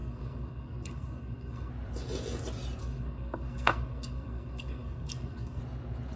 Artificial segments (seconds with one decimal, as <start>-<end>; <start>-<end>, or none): 0.0-1.7; 2.8-5.6